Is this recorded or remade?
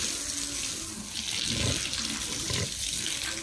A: recorded